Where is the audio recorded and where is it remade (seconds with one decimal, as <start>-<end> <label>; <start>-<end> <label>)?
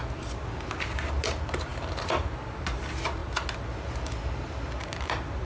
0.0-5.4 recorded